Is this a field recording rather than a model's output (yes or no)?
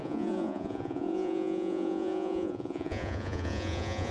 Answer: no